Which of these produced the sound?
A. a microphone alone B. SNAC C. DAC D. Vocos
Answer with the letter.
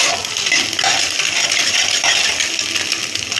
A